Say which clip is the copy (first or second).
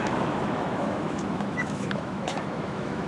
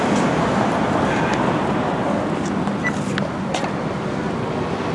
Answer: first